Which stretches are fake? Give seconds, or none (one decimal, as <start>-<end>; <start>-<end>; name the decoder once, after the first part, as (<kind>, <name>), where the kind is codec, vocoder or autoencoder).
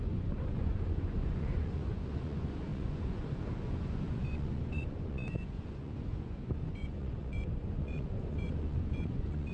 0.0-9.5 (vocoder, Vocos)